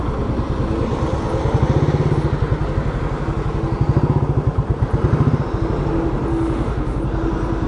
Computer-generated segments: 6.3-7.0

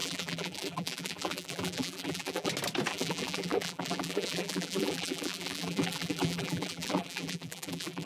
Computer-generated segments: 0.0-2.5; 2.9-8.1

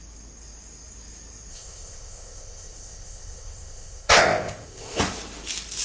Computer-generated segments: 1.5-5.0

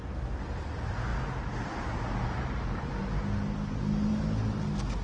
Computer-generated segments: none

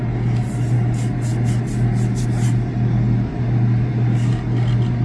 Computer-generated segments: none

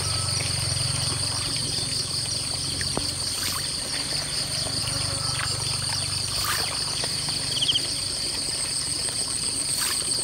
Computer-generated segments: none

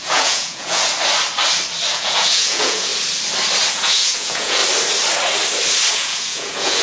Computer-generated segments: 0.0-0.9; 1.9-2.9; 3.7-4.6; 5.9-6.8

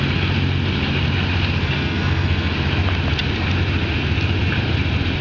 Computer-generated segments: 1.6-2.5